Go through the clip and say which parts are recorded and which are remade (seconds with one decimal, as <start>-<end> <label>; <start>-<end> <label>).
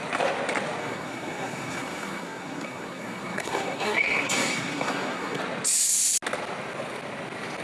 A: 0.0-0.8 recorded; 0.8-5.4 remade; 5.4-7.6 recorded